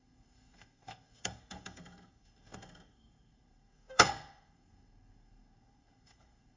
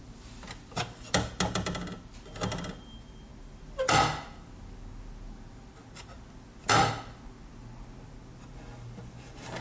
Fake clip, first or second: first